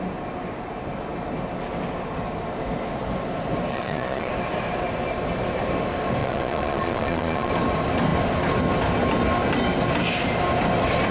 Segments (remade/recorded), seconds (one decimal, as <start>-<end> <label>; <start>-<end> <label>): 0.0-3.7 recorded; 3.7-4.3 remade; 4.3-6.2 recorded; 6.2-7.5 remade; 7.5-11.1 recorded